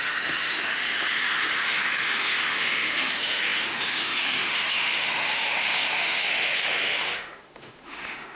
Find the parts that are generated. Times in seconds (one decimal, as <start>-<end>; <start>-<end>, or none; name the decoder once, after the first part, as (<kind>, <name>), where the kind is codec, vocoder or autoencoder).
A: 0.0-8.4 (autoencoder, DAC-VAE)